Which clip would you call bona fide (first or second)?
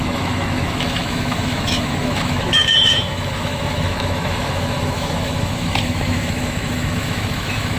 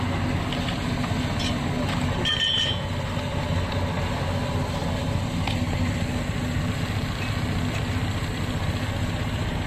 second